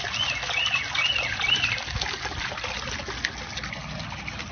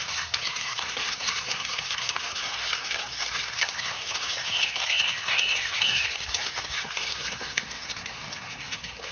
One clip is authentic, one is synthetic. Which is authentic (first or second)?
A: first